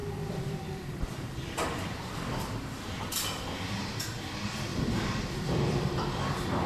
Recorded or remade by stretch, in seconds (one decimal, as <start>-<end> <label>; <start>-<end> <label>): 0.0-6.7 remade

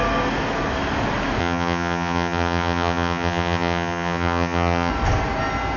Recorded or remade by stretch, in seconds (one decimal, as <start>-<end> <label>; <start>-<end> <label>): 0.0-1.4 recorded; 1.4-4.9 remade; 4.9-5.8 recorded

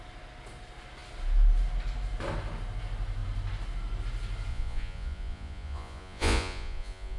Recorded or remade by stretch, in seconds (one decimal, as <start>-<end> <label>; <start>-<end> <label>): 0.0-4.5 recorded; 4.5-7.2 remade

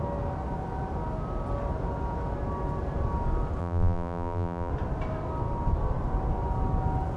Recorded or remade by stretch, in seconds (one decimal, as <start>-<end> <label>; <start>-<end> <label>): 0.0-3.6 recorded; 3.6-4.7 remade; 4.7-7.2 recorded

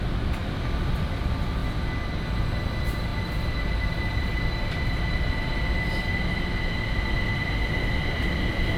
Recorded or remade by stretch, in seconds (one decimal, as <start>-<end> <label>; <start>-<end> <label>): 0.0-0.4 recorded; 0.4-1.2 remade; 1.2-8.8 recorded

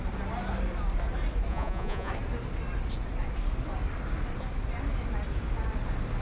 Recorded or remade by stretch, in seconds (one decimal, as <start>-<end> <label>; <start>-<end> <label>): 0.0-1.5 recorded; 1.5-2.1 remade; 2.1-6.2 recorded

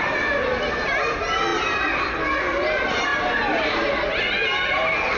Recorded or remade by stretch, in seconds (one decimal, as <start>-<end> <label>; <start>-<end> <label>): 0.0-5.2 recorded

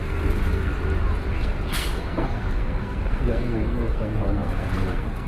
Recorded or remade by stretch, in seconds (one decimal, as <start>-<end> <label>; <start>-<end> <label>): 0.0-0.7 remade; 0.7-1.3 recorded; 1.3-5.3 remade